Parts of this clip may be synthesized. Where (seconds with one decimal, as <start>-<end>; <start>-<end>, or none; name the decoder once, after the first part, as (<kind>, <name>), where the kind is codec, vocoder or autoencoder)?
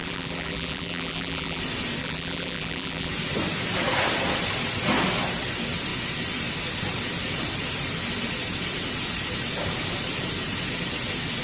0.0-1.6 (vocoder, BigVGAN v2); 2.0-3.1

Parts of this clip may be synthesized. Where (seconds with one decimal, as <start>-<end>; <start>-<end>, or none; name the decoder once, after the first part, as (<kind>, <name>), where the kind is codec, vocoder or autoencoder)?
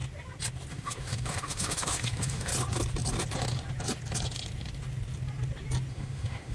0.7-2.5 (autoencoder, DAC-VAE); 5.9-6.5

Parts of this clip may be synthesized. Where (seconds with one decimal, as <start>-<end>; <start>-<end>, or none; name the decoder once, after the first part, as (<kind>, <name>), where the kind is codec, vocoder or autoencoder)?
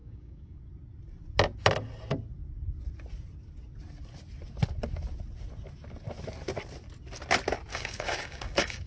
0.0-0.6 (codec, DAC); 7.7-8.9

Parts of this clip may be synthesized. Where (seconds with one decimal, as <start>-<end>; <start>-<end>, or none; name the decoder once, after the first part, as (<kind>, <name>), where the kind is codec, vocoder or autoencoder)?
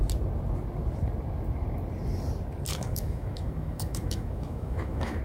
2.7-5.2 (autoencoder, DAC-VAE)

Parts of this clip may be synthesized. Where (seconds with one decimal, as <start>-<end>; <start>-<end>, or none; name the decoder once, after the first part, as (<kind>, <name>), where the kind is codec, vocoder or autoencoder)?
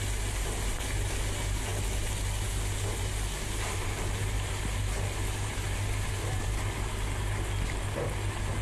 none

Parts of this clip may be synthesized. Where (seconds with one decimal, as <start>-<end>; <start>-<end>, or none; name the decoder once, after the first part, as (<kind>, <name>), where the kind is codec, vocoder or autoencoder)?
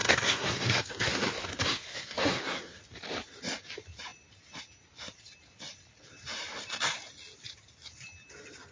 0.0-2.8 (codec, SNAC)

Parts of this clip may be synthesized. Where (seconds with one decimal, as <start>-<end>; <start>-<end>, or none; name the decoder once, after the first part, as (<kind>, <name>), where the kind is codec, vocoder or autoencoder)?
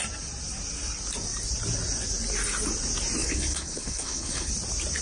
3.2-4.5 (codec, HILCodec)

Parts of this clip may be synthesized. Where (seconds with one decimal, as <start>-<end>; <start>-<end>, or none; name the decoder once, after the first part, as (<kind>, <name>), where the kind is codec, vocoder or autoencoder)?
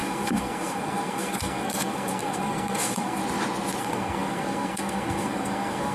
0.0-3.2 (codec, SNAC); 3.8-5.9